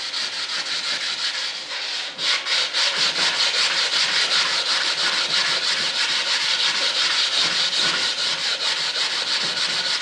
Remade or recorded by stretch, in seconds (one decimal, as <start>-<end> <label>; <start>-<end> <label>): 0.0-10.0 recorded